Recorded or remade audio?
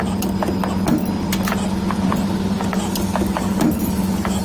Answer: recorded